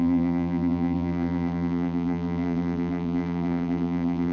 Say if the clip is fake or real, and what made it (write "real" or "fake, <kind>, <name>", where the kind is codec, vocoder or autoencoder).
fake, vocoder, BigVGAN v2